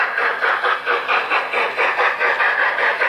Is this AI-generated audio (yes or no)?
no